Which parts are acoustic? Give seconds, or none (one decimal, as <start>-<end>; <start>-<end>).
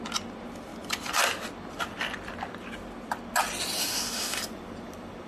0.0-3.8; 4.4-5.3